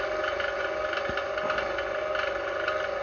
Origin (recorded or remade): recorded